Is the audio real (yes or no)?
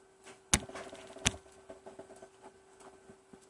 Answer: yes